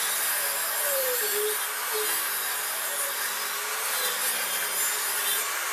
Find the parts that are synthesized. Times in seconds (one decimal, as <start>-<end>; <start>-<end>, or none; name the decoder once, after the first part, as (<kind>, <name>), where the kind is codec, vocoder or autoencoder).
none